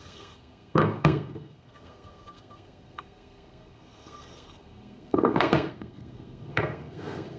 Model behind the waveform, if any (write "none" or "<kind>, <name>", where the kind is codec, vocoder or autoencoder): codec, SNAC